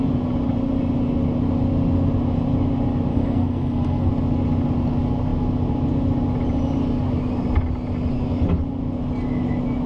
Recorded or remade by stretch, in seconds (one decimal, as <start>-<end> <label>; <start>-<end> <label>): 0.0-3.1 recorded; 3.1-4.1 remade; 4.1-9.9 recorded